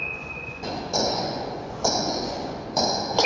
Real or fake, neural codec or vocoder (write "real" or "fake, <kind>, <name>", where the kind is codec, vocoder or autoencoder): fake, vocoder, Vocos